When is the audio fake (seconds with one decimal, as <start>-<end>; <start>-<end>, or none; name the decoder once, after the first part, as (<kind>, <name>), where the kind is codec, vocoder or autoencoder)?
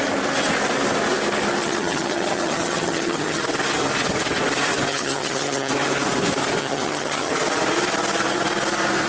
1.6-3.4 (vocoder, HiFi-GAN); 4.9-5.7; 6.6-7.3